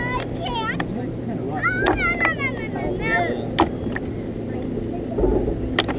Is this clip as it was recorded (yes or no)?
yes